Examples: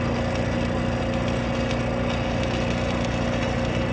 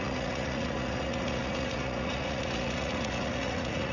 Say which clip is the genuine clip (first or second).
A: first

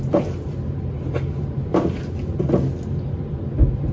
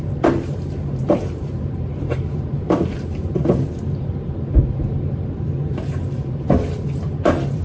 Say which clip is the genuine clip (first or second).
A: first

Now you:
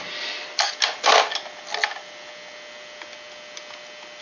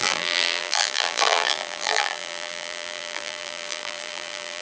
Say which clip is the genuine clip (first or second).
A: first